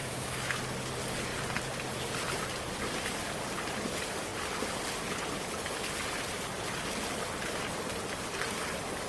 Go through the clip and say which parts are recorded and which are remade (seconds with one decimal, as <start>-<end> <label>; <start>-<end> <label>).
0.0-0.6 remade; 0.6-9.1 recorded